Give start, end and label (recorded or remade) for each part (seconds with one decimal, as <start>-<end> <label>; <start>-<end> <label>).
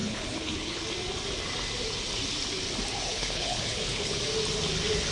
0.0-0.8 remade; 0.8-3.1 recorded; 3.1-4.2 remade; 4.2-5.1 recorded